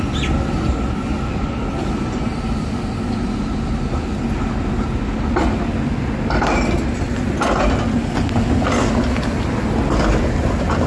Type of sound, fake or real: real